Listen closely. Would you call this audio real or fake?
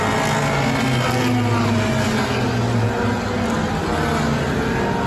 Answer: real